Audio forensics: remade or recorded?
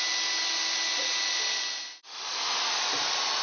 recorded